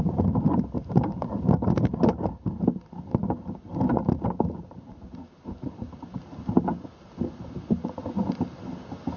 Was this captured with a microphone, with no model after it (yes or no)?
yes